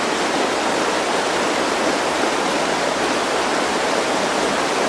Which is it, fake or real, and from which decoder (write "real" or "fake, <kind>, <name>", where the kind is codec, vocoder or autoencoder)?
real